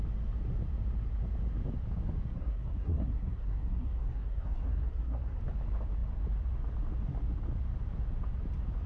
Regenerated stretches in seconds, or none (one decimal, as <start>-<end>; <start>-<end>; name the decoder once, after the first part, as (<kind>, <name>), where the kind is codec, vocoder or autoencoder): 2.3-5.4 (codec, SNAC)